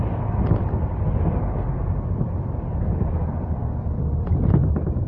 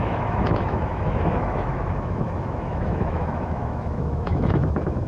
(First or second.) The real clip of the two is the first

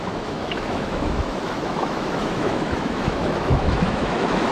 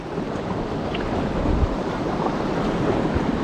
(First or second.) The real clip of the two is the second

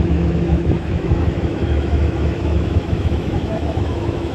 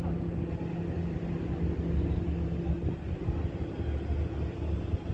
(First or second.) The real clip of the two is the second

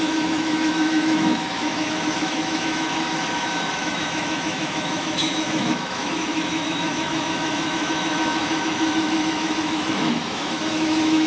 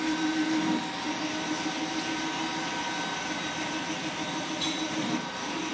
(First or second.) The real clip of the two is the second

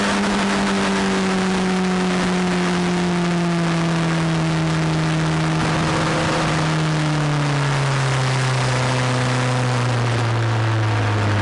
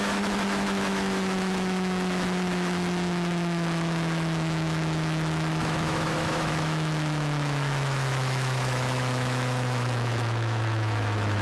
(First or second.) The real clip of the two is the first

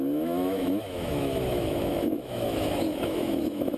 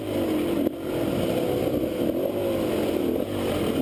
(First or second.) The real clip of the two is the second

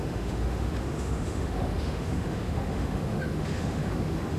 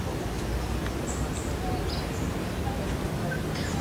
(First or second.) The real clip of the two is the second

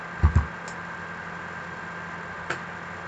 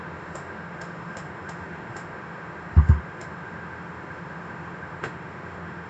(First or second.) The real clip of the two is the first